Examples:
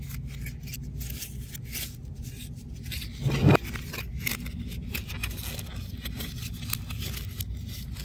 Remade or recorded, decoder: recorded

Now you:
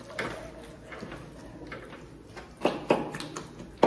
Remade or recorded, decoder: recorded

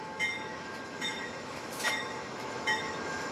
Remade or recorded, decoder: remade, autoencoder, DAC-VAE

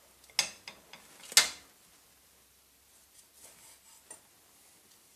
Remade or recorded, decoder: recorded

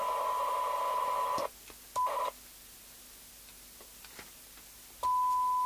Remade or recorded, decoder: recorded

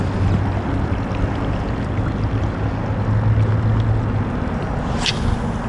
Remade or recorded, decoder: recorded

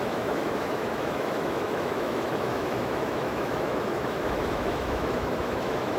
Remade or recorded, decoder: remade, autoencoder, DAC-VAE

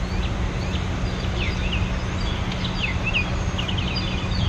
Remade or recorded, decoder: recorded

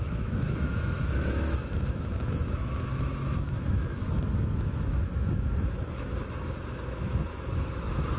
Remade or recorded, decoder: remade, autoencoder, DAC-VAE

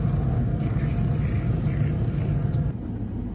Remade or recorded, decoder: recorded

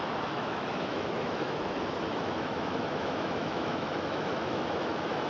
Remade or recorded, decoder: remade, autoencoder, DAC-VAE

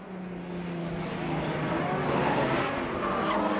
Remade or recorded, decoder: recorded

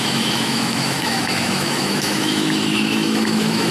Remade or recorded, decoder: remade, autoencoder, DAC-VAE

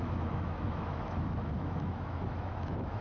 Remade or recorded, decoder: remade, autoencoder, DAC-VAE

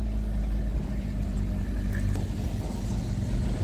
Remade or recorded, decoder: recorded